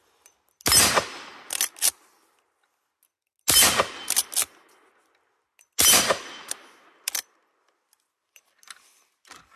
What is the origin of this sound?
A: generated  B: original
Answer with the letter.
B